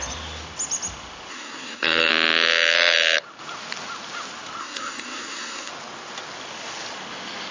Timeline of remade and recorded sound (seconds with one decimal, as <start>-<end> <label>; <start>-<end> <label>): 0.0-1.3 recorded; 1.3-2.1 remade; 2.1-4.6 recorded; 4.6-5.7 remade; 5.7-7.5 recorded